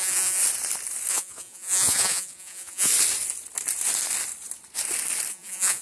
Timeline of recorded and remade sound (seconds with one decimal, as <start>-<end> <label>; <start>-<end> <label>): 0.0-0.4 remade; 0.4-1.1 recorded; 1.1-2.9 remade; 2.9-5.3 recorded; 5.3-5.8 remade